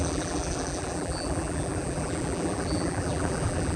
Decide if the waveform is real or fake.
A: fake